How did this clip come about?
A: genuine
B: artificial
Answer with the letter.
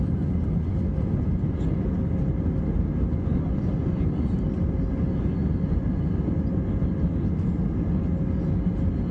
A